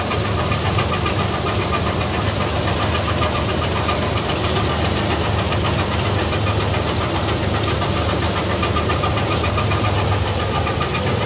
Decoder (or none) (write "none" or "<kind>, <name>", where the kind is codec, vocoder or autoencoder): none